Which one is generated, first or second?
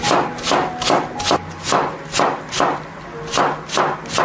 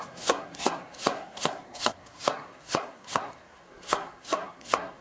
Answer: second